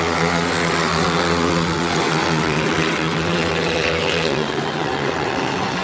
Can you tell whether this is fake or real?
fake